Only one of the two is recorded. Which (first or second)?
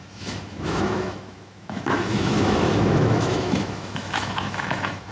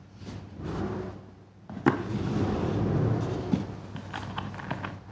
second